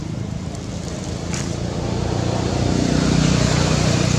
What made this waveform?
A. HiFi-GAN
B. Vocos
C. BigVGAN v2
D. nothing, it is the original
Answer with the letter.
C